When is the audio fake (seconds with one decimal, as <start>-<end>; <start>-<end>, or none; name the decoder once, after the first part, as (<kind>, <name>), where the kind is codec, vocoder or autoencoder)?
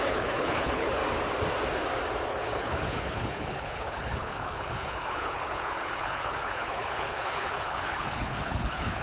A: 0.0-1.0 (codec, HILCodec); 2.3-9.0